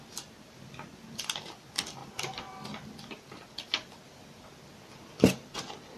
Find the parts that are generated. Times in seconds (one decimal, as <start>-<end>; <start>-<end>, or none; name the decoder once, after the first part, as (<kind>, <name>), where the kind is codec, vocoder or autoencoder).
none